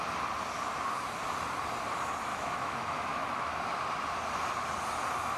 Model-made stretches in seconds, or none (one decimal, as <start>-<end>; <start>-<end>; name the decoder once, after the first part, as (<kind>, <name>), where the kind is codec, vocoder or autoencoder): 2.3-3.5 (autoencoder, DAC-VAE)